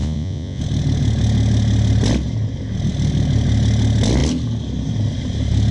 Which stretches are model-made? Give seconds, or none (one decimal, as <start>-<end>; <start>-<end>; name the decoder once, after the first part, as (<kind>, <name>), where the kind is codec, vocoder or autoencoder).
0.0-0.6 (vocoder, Vocos)